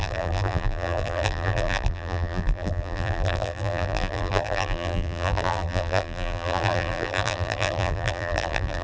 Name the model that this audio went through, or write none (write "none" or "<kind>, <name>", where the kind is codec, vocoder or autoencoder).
vocoder, BigVGAN v2